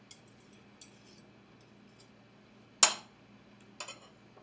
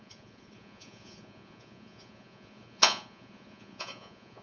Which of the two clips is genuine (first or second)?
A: first